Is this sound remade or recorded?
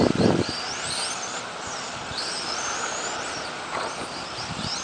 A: remade